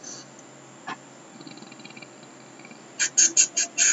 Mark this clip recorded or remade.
recorded